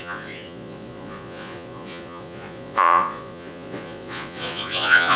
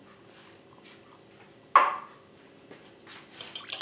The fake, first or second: first